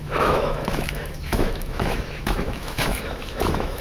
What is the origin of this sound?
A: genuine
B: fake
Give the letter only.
B